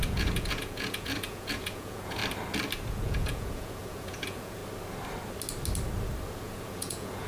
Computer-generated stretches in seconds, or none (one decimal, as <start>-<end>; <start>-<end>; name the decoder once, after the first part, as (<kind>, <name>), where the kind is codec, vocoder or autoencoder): 0.0-2.2 (vocoder, Vocos); 2.9-4.6; 6.3-7.3